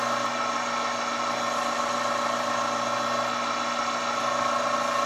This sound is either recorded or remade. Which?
recorded